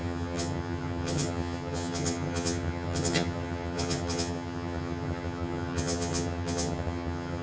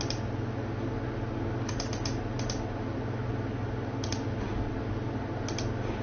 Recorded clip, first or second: second